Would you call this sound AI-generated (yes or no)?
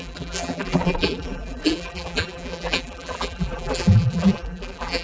yes